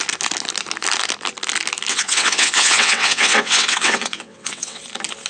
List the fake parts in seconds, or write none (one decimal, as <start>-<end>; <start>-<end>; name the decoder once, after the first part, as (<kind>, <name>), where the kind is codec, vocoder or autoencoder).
1.9-4.8 (vocoder, WaveNeXt)